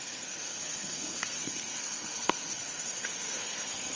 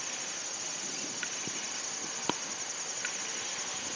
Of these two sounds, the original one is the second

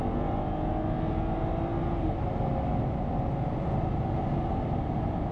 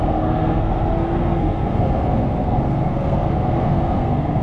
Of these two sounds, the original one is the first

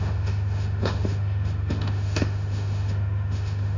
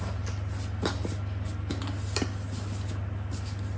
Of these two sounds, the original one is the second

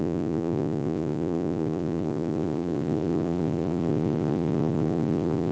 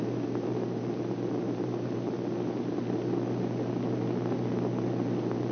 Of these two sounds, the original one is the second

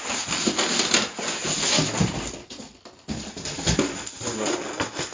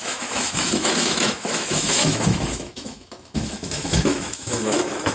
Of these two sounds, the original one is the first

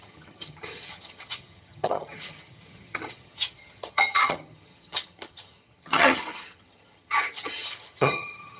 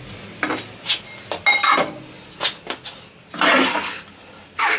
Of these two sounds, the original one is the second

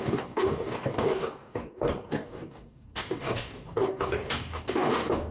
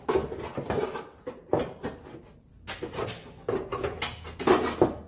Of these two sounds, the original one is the second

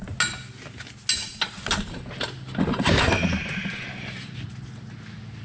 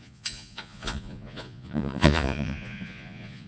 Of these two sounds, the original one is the first